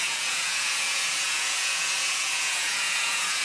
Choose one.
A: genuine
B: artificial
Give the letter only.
B